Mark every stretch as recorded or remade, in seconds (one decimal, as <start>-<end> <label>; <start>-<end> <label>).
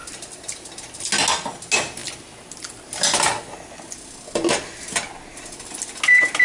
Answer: 0.0-1.0 remade; 1.0-6.4 recorded